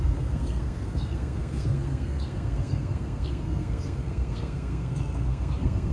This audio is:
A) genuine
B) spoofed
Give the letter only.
B